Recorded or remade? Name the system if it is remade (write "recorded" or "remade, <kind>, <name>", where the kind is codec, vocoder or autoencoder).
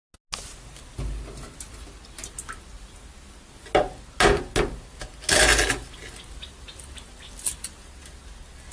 recorded